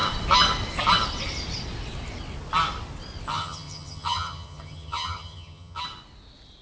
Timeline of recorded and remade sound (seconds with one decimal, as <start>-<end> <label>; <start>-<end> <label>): 0.0-3.3 recorded; 3.3-5.8 remade; 5.8-6.6 recorded